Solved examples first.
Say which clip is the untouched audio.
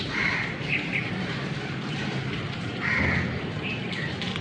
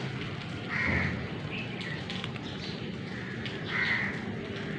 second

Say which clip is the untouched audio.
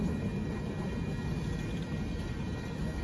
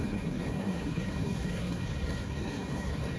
first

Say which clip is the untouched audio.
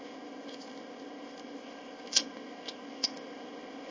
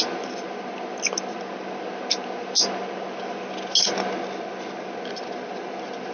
second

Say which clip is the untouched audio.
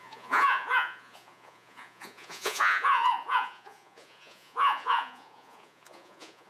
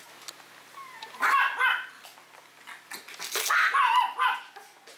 second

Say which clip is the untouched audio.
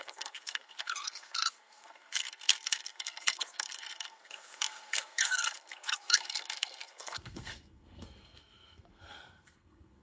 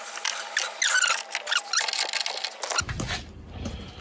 second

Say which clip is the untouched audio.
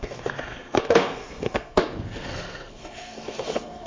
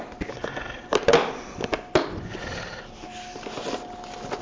second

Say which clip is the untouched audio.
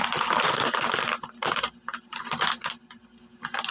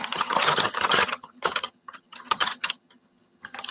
first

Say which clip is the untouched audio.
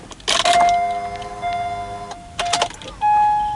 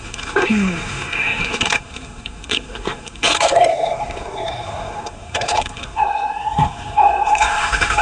first